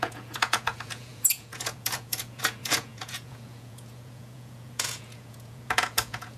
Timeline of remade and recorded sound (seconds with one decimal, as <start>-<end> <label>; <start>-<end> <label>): 0.0-6.4 remade